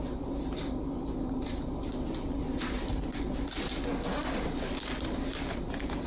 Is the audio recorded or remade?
recorded